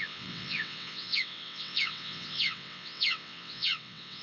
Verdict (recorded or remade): remade